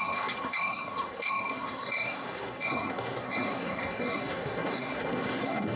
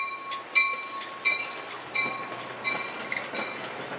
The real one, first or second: second